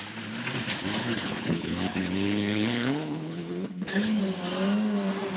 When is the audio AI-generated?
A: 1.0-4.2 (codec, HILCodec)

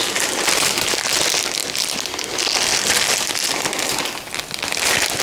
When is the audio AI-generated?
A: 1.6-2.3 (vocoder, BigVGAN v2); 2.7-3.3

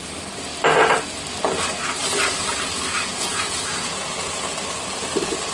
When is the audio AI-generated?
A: 3.1-4.5 (vocoder, Vocos)

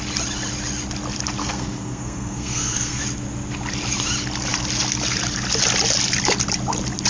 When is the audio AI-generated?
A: 1.4-3.0 (codec, SNAC)